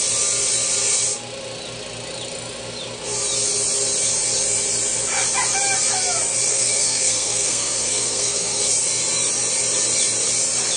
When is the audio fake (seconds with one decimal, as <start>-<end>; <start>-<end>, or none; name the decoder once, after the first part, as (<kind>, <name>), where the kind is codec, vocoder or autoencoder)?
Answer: 6.5-8.6 (codec, SNAC)